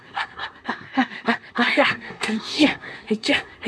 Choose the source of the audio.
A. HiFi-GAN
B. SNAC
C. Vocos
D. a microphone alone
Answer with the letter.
B